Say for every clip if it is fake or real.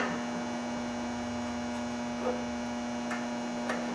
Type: real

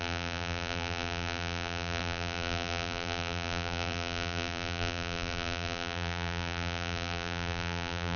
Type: fake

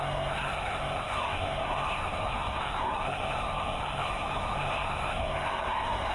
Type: fake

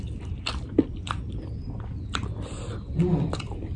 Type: real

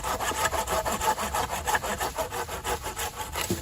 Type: fake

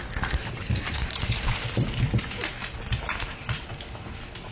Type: real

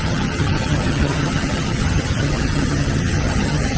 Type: fake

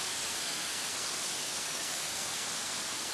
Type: fake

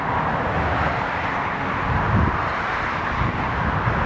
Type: real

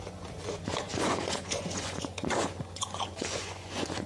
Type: fake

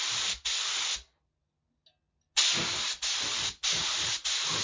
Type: real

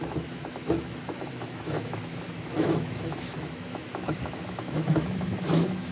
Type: fake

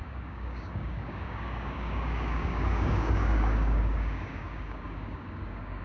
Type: fake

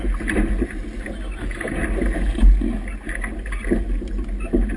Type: real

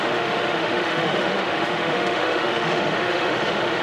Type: fake